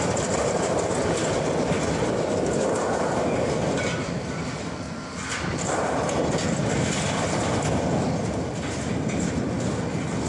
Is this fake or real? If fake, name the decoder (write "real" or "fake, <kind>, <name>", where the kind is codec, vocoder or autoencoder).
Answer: real